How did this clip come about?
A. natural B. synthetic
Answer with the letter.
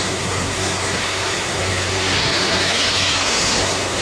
B